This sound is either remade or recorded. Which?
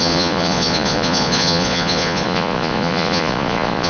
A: remade